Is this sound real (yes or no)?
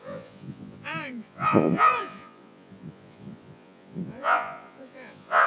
no